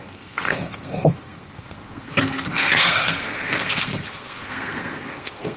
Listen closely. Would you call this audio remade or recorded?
remade